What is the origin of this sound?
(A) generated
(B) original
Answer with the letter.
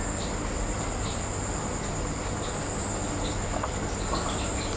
B